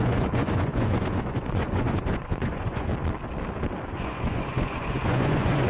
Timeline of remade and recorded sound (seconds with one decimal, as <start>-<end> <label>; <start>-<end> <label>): 0.0-2.9 remade; 2.9-3.9 recorded; 3.9-5.7 remade